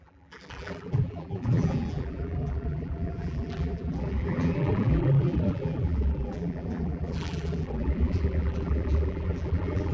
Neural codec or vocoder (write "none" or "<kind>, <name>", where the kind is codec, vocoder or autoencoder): vocoder, BigVGAN v2